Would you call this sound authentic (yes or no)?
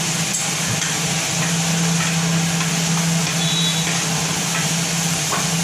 yes